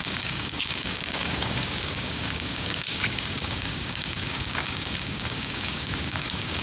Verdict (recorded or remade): remade